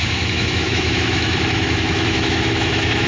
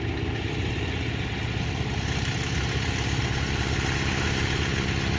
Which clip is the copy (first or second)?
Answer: first